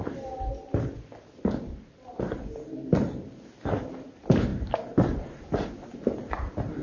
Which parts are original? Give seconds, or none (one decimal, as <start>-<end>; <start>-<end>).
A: 0.0-6.8